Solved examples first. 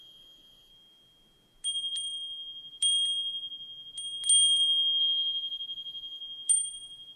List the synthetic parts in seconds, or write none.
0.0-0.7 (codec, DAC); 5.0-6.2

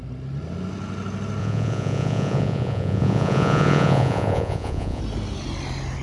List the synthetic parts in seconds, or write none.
1.4-5.0 (vocoder, Vocos)

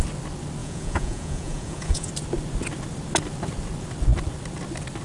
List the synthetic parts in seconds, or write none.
0.6-2.1 (vocoder, Vocos)